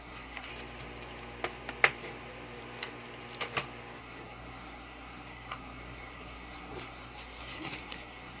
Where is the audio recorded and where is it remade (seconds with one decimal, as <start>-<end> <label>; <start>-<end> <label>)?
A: 0.0-0.5 remade; 0.5-4.0 recorded; 4.0-8.4 remade